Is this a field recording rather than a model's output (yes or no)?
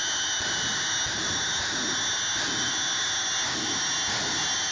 yes